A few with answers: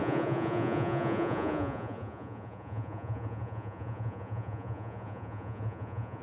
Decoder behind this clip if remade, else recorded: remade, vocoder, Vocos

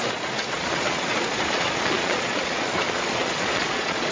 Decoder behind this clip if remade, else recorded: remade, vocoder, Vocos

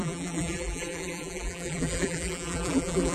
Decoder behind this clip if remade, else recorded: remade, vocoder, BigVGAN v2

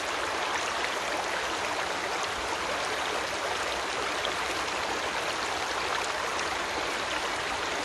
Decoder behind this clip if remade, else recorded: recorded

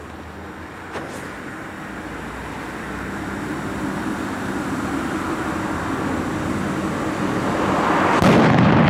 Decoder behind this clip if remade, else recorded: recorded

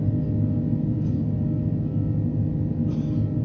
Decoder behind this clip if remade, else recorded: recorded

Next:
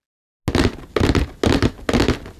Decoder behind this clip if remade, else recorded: recorded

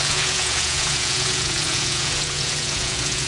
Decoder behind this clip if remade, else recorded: remade, vocoder, Vocos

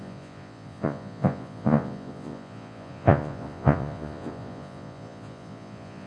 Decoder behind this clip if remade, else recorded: remade, vocoder, Vocos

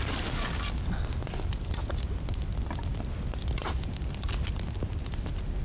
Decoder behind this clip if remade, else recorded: recorded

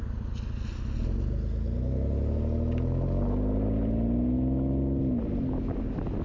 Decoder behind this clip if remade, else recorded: recorded